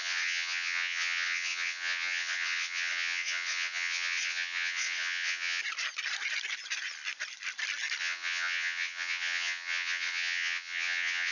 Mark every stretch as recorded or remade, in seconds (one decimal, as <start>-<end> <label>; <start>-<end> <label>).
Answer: 0.0-5.6 remade; 5.6-8.0 recorded; 8.0-11.3 remade